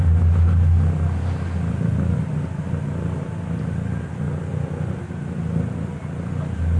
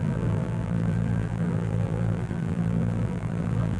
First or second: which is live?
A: first